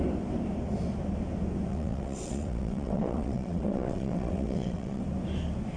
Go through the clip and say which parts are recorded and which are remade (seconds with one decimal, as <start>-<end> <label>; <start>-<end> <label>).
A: 0.0-1.7 recorded; 1.7-5.0 remade; 5.0-5.8 recorded